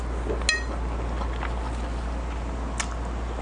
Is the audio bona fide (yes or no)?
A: yes